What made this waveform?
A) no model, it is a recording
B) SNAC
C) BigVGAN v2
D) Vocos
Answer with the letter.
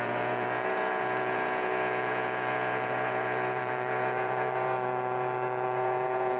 D